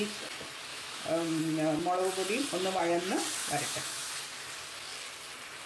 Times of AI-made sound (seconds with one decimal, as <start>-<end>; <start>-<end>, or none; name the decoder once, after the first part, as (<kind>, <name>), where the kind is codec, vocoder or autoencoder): 0.7-1.4 (autoencoder, DAC-VAE); 3.4-4.1